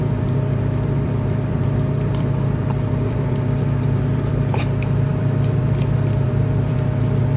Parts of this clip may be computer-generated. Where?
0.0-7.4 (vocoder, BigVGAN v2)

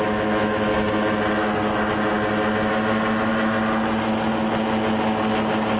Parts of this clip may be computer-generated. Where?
0.0-0.7 (autoencoder, DAC-VAE); 2.7-3.3

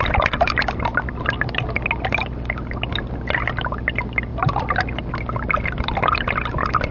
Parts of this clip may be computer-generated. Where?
4.3-5.1 (vocoder, BigVGAN v2)